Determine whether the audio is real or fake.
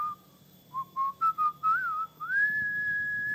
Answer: real